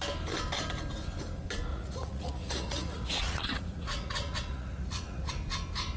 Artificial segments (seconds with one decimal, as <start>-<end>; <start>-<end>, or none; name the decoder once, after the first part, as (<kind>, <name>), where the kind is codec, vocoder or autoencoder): 1.7-5.3 (vocoder, Vocos)